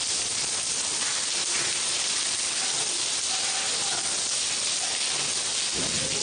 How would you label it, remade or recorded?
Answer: recorded